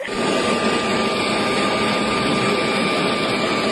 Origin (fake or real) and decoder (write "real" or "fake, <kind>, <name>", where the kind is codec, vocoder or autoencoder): real